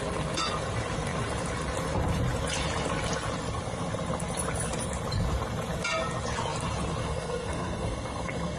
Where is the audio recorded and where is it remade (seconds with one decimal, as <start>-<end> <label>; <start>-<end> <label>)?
0.0-7.0 recorded; 7.0-8.6 remade